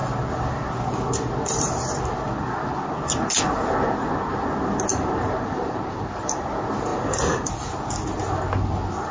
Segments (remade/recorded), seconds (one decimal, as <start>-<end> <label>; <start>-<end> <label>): 0.0-4.9 recorded; 4.9-6.4 remade; 6.4-6.9 recorded; 6.9-7.5 remade; 7.5-9.1 recorded